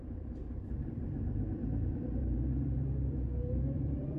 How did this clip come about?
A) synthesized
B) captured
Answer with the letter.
A